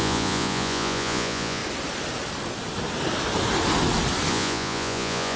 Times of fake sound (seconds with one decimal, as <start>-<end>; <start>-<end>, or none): 0.0-1.6; 4.3-5.4